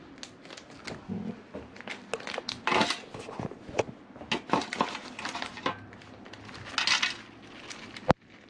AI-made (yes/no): no